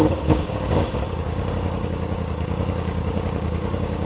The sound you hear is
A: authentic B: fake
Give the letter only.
B